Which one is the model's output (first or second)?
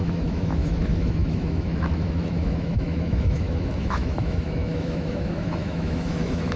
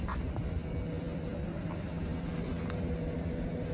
first